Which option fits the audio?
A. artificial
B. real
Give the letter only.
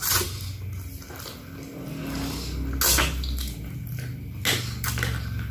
B